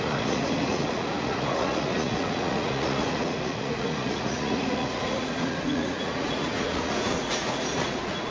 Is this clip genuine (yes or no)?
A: no